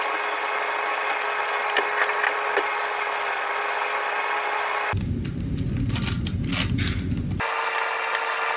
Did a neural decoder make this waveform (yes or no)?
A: no